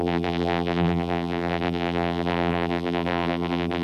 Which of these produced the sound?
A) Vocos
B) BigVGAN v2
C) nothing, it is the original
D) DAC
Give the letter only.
B